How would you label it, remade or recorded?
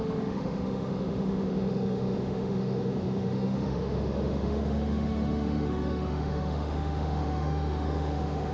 remade